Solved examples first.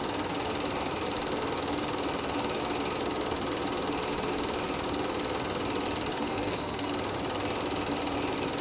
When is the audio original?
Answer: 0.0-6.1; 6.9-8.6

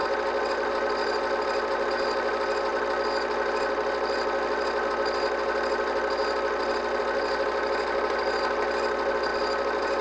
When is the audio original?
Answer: 0.0-10.0

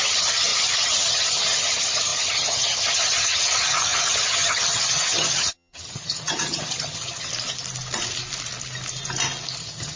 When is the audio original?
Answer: 7.3-9.6